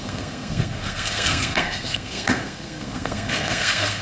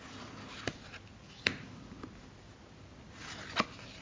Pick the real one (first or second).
second